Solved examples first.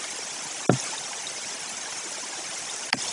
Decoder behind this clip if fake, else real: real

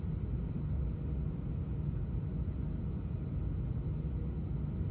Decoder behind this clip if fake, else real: real